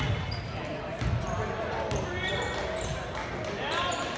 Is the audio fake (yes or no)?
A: no